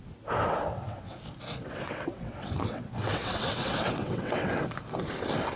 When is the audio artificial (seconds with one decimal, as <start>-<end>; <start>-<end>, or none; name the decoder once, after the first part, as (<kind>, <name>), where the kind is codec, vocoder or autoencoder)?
0.7-1.2 (vocoder, WaveNeXt); 1.6-4.5